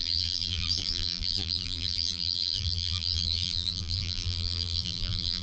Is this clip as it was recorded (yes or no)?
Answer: no